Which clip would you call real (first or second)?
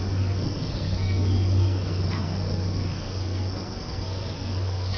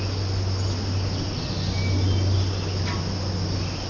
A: second